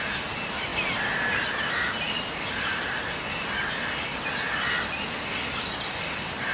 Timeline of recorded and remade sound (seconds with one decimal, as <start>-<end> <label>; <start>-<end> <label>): 0.0-6.5 recorded